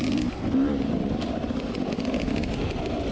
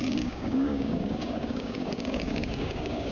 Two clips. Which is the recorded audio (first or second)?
first